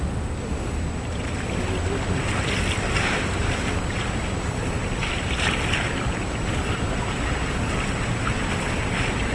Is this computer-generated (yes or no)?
no